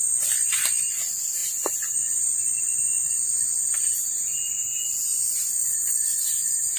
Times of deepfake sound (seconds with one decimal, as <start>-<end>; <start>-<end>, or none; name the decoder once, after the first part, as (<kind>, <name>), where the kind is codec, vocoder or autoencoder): none